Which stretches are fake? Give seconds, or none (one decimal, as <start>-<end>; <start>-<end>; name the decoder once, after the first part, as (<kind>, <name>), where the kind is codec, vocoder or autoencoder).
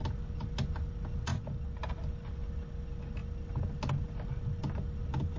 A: none